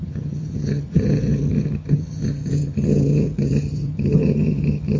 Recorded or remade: remade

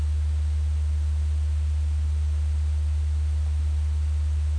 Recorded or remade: recorded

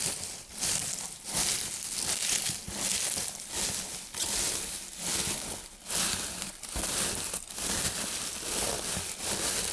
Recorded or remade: recorded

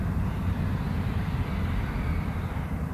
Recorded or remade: remade